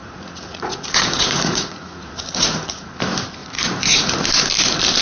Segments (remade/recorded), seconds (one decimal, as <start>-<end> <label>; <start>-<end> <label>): 0.0-2.8 remade; 2.8-3.4 recorded; 3.4-4.1 remade; 4.1-5.0 recorded